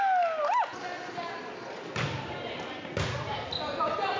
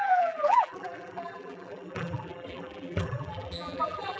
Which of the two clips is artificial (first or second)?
second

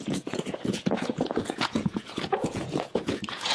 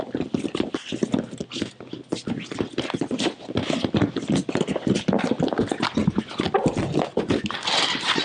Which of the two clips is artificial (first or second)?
first